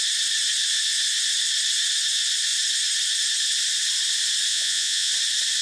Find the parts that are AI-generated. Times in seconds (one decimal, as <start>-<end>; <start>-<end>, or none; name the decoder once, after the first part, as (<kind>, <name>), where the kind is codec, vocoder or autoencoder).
4.5-5.1 (vocoder, Vocos)